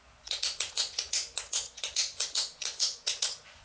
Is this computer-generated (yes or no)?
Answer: yes